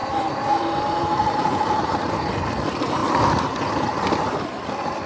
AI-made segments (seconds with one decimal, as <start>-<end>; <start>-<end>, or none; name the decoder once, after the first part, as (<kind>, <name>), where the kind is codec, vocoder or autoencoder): 0.0-1.0 (vocoder, BigVGAN v2)

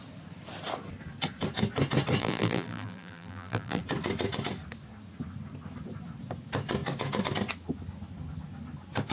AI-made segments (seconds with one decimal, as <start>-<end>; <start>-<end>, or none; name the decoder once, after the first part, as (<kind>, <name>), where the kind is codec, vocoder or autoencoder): 2.2-3.8 (vocoder, BigVGAN v2)

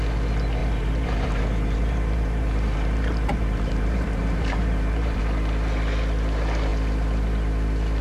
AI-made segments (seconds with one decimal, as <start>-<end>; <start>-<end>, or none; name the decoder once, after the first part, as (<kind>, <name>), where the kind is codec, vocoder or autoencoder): 0.6-5.2 (vocoder, BigVGAN v2)

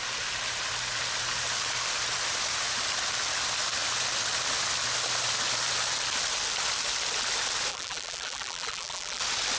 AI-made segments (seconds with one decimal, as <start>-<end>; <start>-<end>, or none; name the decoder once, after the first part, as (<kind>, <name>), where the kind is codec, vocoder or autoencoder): 7.7-9.2 (vocoder, BigVGAN v2)

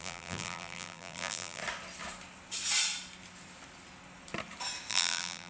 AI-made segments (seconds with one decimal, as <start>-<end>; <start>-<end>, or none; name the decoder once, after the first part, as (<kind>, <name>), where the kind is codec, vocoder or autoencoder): 0.0-1.6 (vocoder, BigVGAN v2); 4.9-5.5

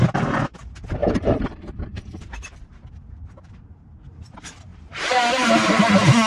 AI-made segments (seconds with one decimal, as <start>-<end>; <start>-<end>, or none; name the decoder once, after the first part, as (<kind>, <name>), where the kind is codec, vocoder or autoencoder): 1.0-3.5 (vocoder, BigVGAN v2); 4.7-5.8

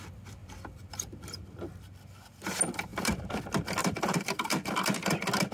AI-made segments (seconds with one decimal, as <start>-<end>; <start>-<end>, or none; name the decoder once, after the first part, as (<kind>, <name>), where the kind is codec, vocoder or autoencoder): 0.4-1.1 (vocoder, BigVGAN v2); 2.9-3.4; 3.8-4.7